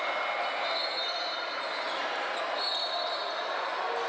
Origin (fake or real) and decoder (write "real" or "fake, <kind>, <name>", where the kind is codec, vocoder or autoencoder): real